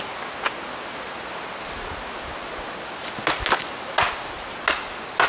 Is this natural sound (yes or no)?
yes